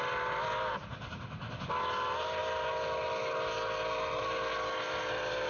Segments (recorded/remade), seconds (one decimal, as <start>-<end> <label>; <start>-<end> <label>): 0.0-5.5 recorded